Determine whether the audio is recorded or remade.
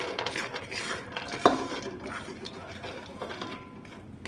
recorded